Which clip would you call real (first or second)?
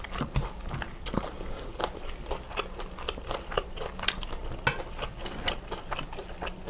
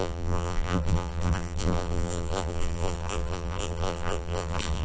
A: first